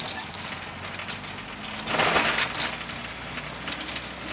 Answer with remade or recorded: recorded